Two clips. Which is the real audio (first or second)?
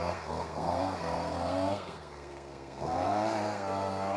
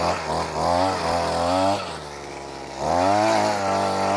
second